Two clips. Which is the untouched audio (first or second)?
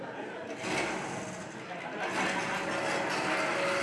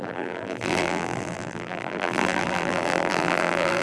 first